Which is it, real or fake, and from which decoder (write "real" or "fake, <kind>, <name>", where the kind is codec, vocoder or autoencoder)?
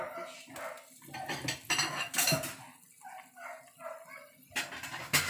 real